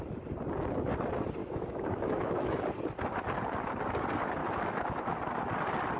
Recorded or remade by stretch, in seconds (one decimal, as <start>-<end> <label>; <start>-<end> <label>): 0.0-1.4 recorded; 1.4-2.6 remade; 2.6-4.4 recorded; 4.4-5.2 remade; 5.2-6.0 recorded